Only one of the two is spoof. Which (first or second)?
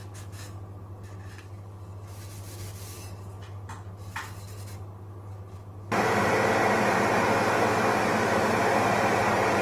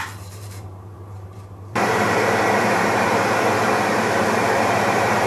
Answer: second